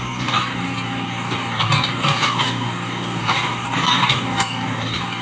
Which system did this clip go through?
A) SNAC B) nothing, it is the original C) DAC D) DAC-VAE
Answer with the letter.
C